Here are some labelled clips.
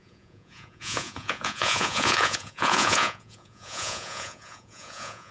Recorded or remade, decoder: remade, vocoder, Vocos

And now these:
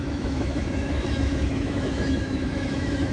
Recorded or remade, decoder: remade, autoencoder, DAC-VAE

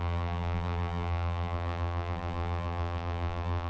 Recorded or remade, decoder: remade, vocoder, BigVGAN v2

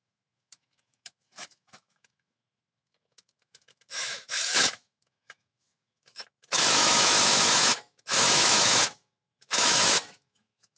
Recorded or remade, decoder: remade, autoencoder, DAC-VAE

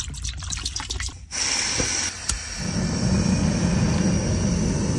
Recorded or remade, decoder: recorded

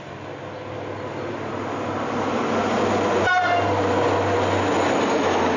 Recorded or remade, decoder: recorded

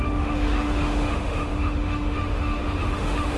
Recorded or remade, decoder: remade, autoencoder, DAC-VAE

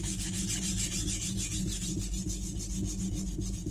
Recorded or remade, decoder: recorded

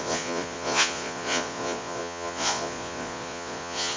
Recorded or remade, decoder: remade, vocoder, Vocos